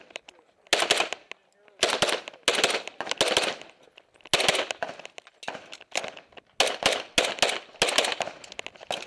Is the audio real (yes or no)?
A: yes